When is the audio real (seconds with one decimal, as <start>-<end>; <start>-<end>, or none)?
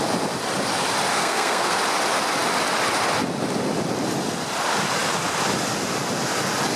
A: 0.0-1.1; 1.8-6.8